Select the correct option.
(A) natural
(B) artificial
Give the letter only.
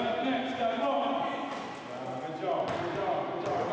A